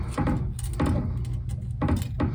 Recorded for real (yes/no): yes